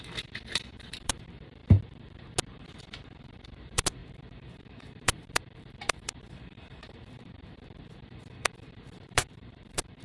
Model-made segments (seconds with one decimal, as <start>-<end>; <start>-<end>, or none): 0.0-1.6; 3.2-10.0